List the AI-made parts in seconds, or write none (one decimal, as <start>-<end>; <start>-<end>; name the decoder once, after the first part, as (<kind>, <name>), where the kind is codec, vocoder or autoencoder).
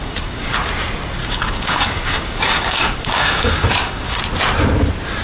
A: 0.0-0.7 (codec, DAC); 1.2-4.2